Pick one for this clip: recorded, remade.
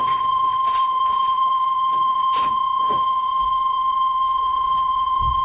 remade